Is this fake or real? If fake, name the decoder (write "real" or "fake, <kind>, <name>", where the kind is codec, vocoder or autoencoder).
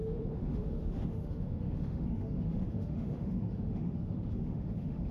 fake, autoencoder, DAC-VAE